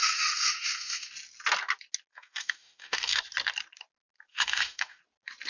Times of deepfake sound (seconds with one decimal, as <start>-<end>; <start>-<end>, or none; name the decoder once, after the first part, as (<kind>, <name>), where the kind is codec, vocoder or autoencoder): 0.0-1.1 (autoencoder, DAC-VAE); 2.1-3.2; 4.3-5.0